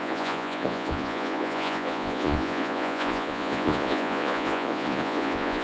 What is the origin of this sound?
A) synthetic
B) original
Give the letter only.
A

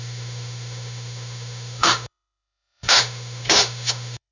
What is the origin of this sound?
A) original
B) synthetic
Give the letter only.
B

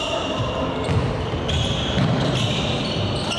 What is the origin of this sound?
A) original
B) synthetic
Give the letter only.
A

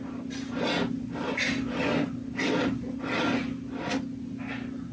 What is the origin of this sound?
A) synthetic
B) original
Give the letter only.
B